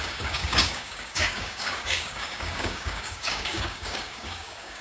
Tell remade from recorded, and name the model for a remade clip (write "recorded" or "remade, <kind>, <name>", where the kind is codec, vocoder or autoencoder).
remade, codec, DAC